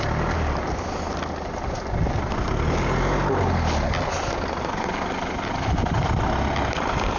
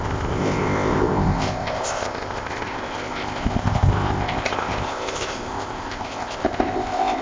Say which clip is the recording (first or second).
first